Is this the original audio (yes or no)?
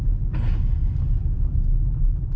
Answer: yes